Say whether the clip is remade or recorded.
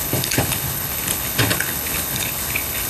remade